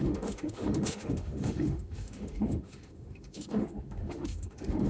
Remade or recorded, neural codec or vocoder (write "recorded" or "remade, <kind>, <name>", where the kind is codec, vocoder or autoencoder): remade, autoencoder, DAC-VAE